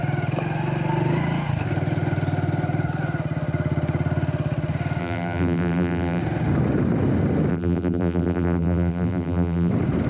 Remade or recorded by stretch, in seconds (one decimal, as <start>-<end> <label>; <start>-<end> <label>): 0.0-5.0 recorded; 5.0-6.2 remade; 6.2-7.5 recorded; 7.5-9.7 remade; 9.7-10.1 recorded